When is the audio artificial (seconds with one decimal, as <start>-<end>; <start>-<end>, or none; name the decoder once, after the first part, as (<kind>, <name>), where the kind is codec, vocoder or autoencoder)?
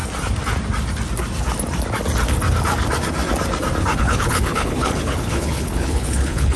4.0-6.6 (codec, HILCodec)